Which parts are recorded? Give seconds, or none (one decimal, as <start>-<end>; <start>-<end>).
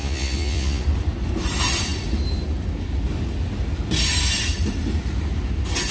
0.8-5.9